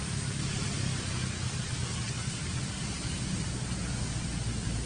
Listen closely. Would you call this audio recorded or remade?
recorded